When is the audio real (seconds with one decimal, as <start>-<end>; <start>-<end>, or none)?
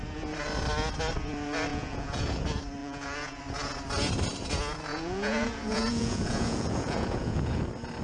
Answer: 0.0-1.7; 2.4-2.8; 3.4-4.9; 7.6-8.0